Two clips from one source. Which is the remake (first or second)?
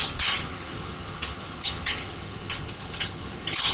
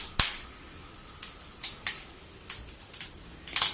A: first